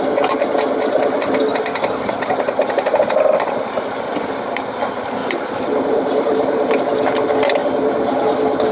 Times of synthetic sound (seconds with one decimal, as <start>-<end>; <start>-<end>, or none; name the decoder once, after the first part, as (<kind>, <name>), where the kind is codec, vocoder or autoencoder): 5.2-6.8 (vocoder, BigVGAN v2)